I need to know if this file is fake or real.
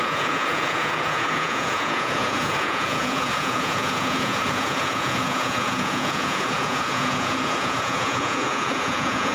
fake